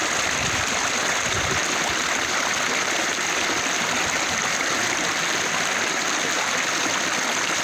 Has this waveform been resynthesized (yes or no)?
no